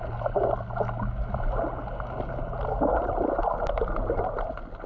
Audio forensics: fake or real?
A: real